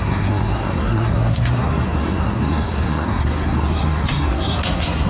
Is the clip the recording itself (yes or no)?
no